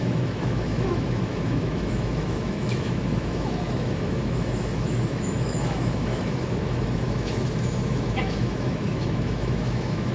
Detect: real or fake fake